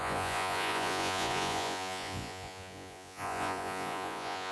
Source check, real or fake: fake